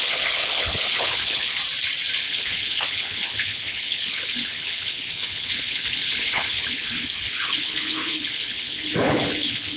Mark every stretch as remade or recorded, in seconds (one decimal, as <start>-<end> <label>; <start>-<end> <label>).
0.0-1.6 remade; 1.6-2.2 recorded; 2.2-9.8 remade